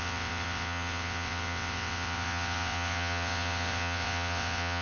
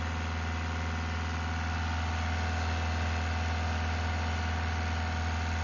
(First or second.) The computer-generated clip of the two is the first